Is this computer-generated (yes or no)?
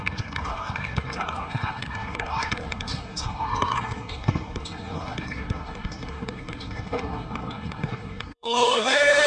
yes